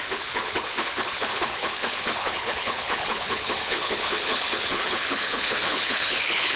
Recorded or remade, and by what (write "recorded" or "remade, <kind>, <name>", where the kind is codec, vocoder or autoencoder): remade, codec, HILCodec